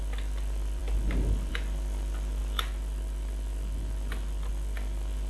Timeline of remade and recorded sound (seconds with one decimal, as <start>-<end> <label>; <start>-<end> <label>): 0.0-5.3 recorded